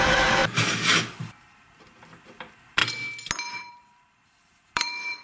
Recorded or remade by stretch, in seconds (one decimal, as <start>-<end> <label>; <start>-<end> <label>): 0.0-0.4 remade; 0.4-1.2 recorded; 1.2-2.8 remade; 2.8-3.7 recorded; 3.7-5.2 remade